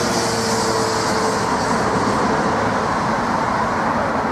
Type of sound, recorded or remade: recorded